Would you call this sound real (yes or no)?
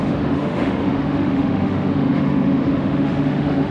no